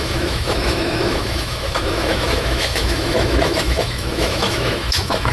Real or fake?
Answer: fake